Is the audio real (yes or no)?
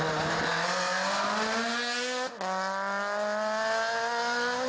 yes